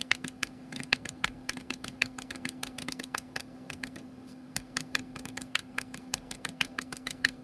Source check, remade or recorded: remade